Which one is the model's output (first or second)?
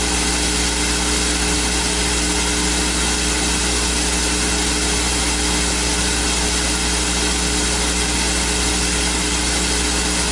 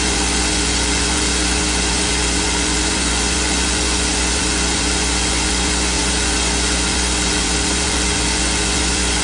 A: second